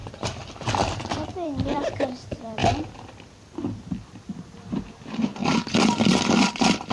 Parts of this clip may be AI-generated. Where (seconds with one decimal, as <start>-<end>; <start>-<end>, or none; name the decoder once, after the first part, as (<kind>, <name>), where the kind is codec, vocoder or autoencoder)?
0.0-2.6 (vocoder, BigVGAN v2); 4.9-5.4; 6.5-6.9